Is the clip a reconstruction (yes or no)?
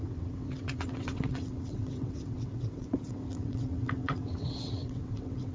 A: yes